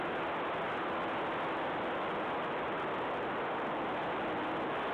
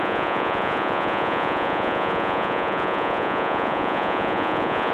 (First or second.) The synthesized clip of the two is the second